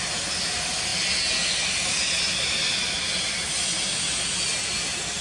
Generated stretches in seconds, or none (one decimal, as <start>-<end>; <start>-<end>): none